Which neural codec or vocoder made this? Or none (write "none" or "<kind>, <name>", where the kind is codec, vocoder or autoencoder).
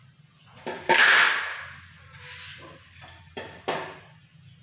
none